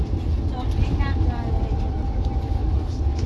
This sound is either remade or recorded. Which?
recorded